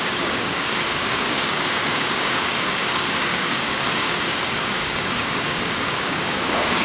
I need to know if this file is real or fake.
fake